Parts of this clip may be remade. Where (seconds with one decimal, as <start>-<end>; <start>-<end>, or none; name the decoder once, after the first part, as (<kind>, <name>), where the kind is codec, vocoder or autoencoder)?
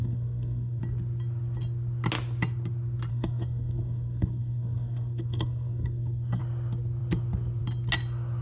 0.0-0.8 (codec, SNAC); 3.1-6.4